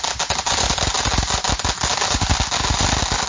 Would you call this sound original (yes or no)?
yes